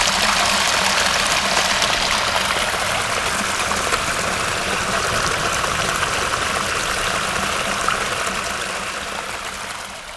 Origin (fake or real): real